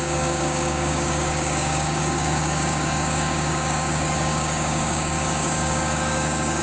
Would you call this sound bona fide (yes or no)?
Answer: no